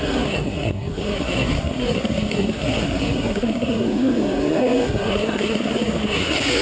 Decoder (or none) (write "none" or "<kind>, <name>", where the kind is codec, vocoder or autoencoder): codec, SNAC